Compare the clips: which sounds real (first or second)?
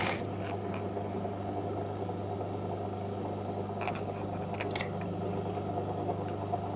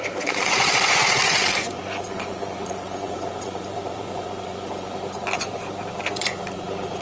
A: first